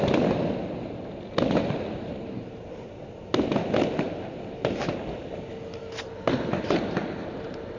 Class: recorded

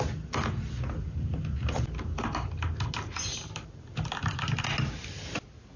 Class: recorded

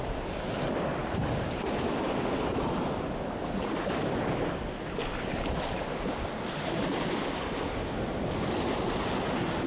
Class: recorded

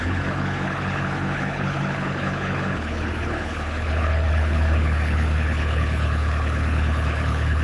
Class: remade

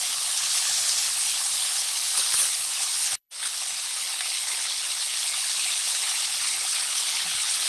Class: remade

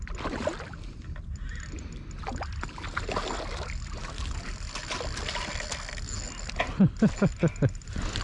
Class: recorded